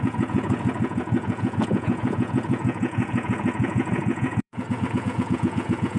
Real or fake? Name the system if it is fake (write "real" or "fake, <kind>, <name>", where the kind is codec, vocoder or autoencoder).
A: fake, vocoder, Vocos